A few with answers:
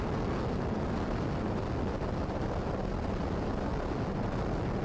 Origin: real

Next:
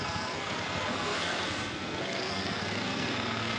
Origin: fake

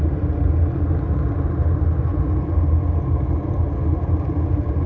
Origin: real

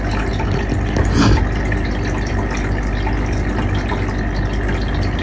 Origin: real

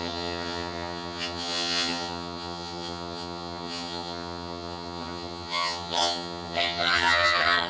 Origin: fake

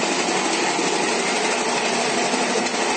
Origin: real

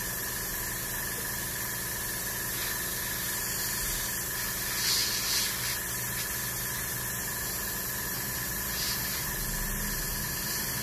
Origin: real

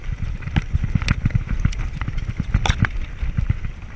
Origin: real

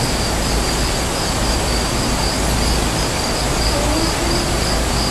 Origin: real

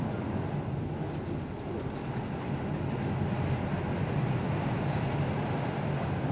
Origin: real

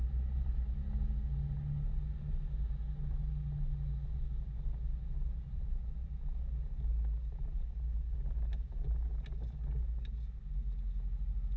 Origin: real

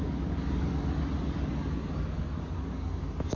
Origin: fake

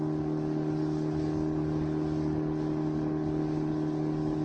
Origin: real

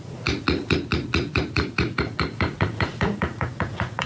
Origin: fake